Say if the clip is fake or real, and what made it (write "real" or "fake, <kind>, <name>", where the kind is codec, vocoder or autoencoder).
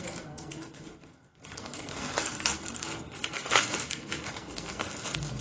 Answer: fake, codec, SNAC